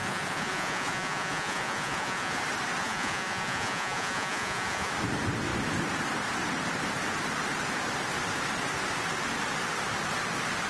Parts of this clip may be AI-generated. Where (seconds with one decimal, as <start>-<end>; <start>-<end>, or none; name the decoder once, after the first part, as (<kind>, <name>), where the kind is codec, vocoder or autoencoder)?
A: 0.0-2.4 (vocoder, Vocos); 2.8-4.9